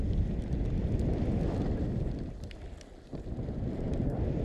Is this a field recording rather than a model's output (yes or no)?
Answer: yes